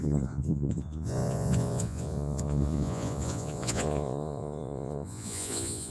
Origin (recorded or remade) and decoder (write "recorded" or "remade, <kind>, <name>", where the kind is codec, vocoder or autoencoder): remade, vocoder, Vocos